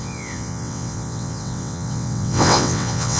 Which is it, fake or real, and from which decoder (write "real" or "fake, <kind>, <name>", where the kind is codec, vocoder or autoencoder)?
fake, vocoder, WaveNeXt